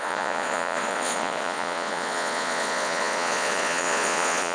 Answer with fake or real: fake